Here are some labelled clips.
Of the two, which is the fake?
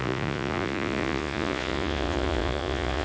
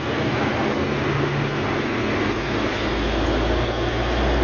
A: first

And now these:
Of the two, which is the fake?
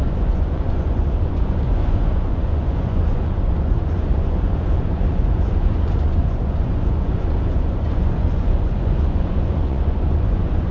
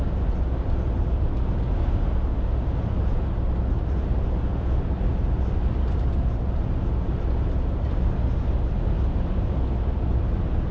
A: first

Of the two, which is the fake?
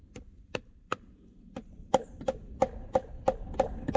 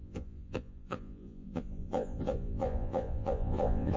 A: second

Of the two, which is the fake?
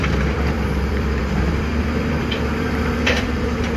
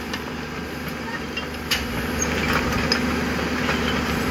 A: first